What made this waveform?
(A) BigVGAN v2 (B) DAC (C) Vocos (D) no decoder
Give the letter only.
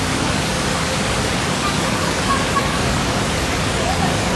B